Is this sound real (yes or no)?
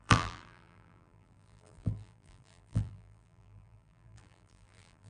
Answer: no